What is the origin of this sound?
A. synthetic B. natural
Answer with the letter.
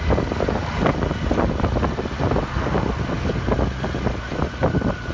B